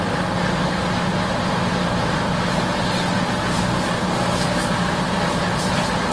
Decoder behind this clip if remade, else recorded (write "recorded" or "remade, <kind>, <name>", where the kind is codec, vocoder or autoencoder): recorded